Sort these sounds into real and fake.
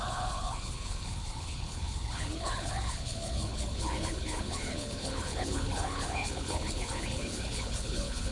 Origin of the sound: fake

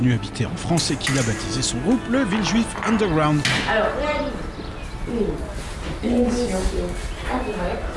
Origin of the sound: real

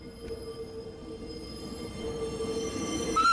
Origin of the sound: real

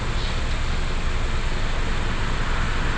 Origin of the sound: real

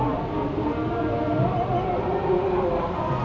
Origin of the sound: real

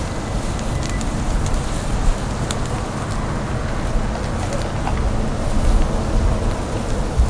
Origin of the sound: real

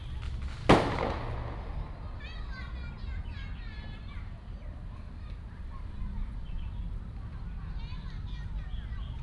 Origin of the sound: real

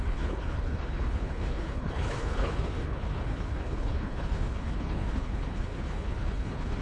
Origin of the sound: fake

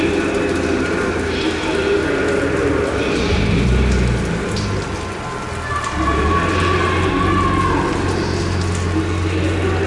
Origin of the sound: real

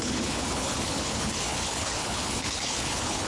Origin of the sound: fake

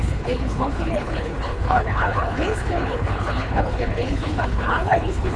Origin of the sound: fake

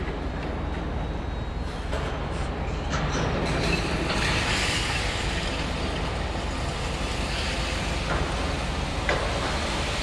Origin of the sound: real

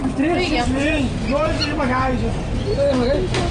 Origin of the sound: real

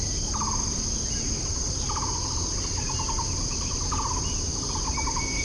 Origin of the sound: real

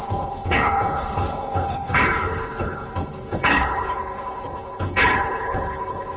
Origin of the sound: fake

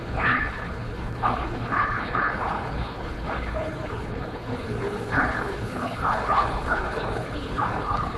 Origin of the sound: fake